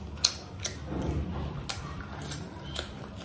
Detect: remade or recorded recorded